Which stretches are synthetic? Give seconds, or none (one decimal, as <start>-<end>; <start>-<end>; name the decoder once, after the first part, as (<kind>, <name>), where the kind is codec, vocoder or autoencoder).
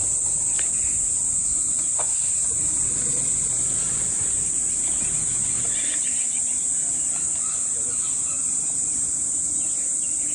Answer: 1.5-2.1 (vocoder, Vocos)